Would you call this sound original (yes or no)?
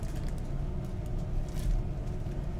yes